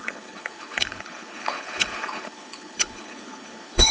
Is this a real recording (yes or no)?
no